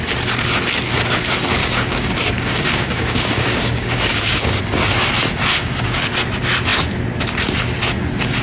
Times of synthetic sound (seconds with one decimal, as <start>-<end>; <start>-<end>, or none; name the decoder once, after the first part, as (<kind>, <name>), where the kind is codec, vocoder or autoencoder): 1.6-4.6 (codec, DAC); 5.5-6.0